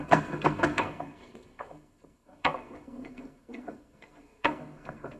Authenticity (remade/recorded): remade